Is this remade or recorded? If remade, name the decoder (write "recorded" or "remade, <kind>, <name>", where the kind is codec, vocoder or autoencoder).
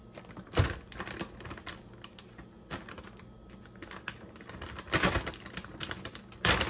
recorded